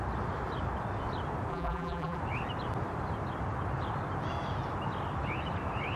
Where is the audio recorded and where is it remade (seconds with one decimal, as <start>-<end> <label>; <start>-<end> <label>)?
0.0-1.5 recorded; 1.5-2.2 remade; 2.2-6.0 recorded